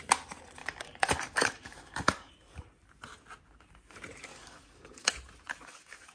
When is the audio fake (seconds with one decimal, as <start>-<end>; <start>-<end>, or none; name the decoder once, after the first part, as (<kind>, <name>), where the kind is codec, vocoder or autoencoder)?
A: 0.6-2.3 (codec, DAC); 4.3-5.1; 5.5-6.1